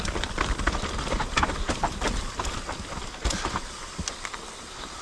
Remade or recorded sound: recorded